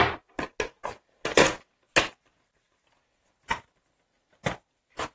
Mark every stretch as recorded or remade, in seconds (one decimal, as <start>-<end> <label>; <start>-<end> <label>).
0.0-5.1 recorded